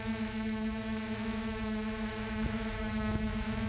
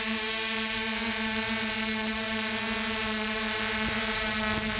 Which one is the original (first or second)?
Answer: second